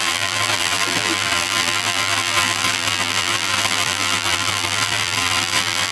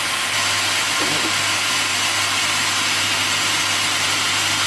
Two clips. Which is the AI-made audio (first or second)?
first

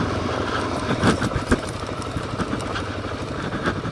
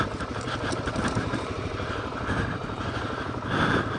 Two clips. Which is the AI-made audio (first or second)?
second